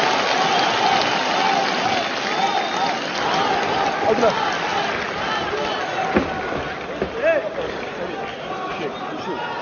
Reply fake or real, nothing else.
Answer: real